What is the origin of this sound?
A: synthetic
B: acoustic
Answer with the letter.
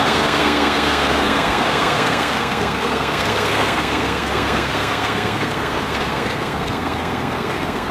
A